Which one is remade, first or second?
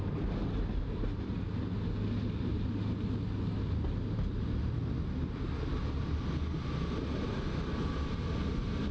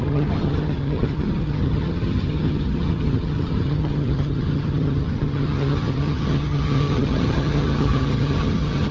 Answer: second